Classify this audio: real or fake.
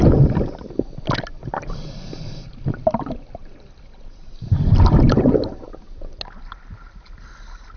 real